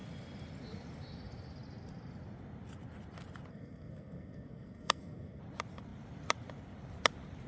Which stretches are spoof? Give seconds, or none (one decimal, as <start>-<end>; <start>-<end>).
3.5-5.4